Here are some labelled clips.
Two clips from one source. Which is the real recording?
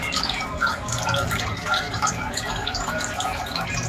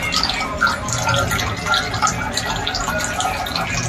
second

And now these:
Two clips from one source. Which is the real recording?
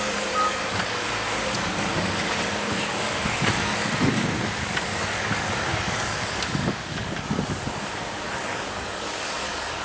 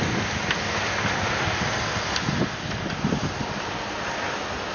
second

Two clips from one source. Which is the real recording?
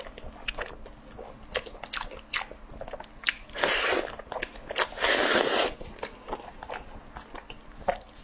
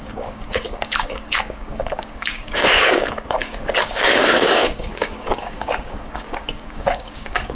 first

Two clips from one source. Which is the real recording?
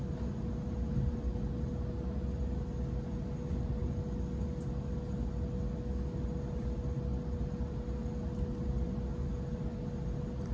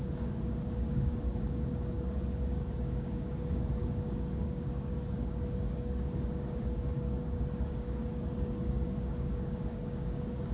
first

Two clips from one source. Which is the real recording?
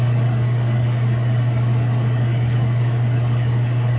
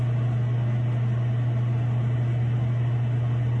second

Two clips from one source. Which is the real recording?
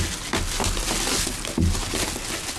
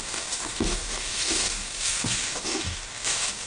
first